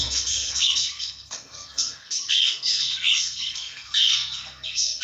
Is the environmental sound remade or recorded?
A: remade